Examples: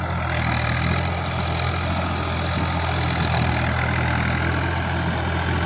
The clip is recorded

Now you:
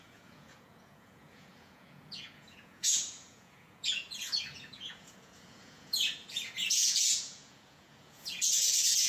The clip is remade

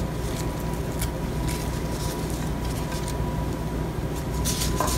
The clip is recorded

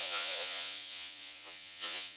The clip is remade